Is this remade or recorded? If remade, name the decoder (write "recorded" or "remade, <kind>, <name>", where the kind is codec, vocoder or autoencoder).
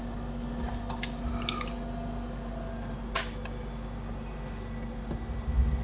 recorded